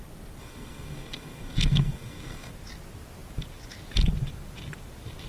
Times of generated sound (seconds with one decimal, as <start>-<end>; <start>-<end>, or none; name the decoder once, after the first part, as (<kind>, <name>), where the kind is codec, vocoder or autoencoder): 0.4-2.5 (codec, SNAC)